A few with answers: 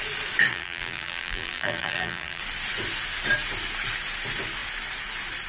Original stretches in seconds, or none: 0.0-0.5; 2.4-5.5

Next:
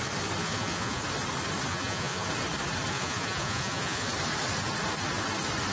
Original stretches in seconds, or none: 0.0-0.4; 1.0-1.7; 2.3-2.9; 4.1-5.7

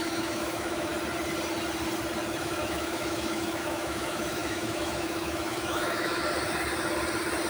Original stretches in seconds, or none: 0.9-2.4; 6.2-7.5

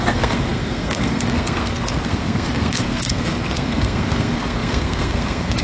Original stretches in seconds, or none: none

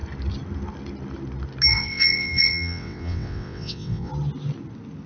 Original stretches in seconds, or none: 0.0-1.7; 4.1-5.1